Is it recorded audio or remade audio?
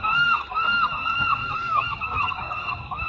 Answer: remade